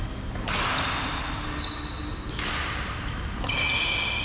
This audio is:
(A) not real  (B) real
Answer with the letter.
B